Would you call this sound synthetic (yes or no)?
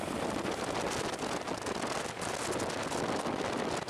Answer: no